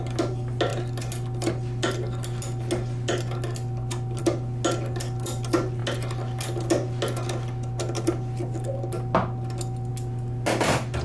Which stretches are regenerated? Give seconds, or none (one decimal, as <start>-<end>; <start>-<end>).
none